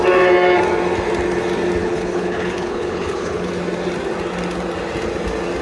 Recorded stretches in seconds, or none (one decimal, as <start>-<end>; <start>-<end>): 0.0-1.8; 3.5-5.6